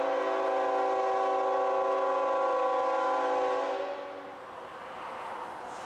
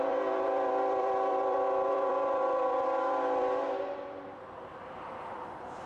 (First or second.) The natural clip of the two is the first